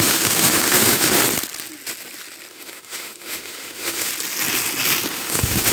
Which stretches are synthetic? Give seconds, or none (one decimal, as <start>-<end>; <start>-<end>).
0.0-1.2; 2.5-4.1; 5.1-5.7